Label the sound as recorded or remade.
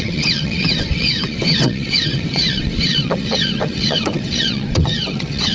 remade